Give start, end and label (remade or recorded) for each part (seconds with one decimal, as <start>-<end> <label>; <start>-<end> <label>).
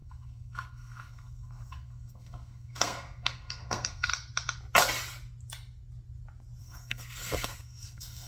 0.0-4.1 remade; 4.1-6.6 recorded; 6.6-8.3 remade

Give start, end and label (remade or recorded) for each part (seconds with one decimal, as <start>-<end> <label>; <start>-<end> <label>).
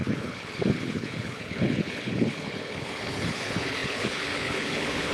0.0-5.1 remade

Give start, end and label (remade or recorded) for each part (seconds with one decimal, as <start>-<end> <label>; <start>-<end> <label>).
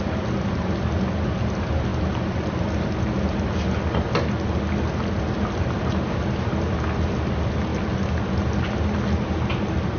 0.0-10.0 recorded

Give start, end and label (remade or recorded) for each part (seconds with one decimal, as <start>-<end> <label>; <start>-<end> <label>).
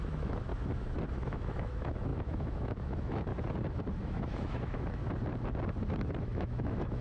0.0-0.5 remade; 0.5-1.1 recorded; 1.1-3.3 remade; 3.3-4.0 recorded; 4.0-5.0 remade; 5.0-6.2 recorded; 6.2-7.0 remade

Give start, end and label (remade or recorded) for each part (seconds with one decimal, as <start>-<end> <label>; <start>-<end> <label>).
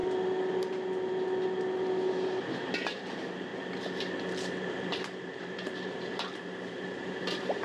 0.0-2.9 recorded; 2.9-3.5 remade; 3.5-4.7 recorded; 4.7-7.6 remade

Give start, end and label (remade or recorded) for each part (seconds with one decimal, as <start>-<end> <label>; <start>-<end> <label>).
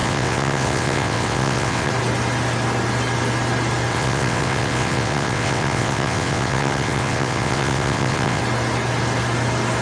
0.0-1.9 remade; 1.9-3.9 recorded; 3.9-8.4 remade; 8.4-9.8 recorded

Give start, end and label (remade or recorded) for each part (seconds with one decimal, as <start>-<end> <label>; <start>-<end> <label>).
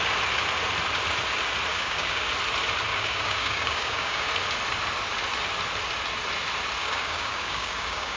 0.0-1.7 recorded; 1.7-2.3 remade; 2.3-2.9 recorded; 2.9-4.3 remade; 4.3-6.8 recorded; 6.8-8.2 remade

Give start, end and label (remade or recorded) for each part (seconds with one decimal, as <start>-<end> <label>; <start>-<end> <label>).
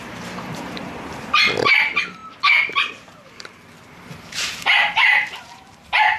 0.0-0.8 remade; 0.8-1.6 recorded; 1.6-6.2 remade